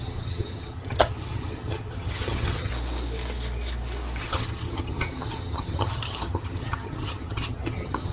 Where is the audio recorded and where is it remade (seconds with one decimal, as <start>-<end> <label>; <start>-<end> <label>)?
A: 0.0-2.7 remade; 2.7-4.2 recorded; 4.2-8.1 remade